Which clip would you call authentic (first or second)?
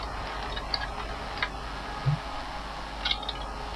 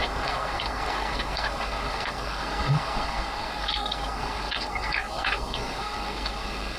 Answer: first